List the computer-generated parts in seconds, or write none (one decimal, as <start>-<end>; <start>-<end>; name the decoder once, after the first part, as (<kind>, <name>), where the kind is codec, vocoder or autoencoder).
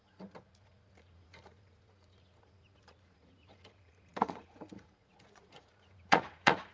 0.0-6.7 (vocoder, Vocos)